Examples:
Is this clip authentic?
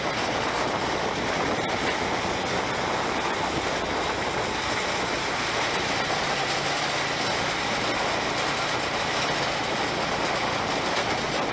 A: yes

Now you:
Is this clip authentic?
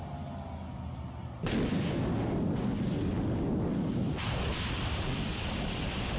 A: yes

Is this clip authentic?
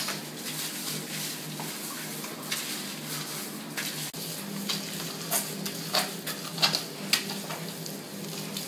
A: yes